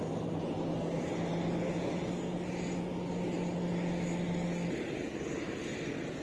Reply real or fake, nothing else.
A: real